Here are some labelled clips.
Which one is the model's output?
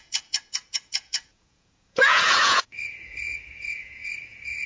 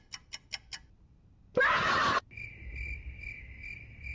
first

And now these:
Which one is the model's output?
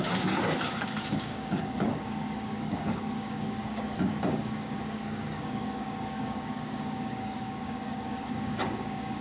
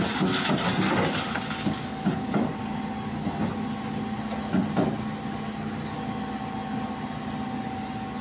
first